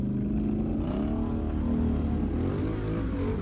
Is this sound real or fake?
real